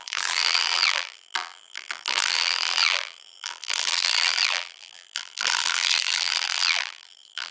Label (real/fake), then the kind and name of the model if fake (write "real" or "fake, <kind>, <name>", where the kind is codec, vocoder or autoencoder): fake, vocoder, BigVGAN v2